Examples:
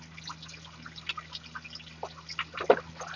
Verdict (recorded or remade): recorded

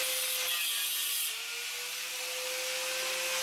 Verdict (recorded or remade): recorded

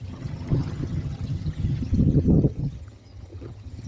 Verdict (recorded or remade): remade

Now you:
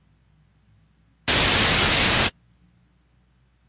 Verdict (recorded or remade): recorded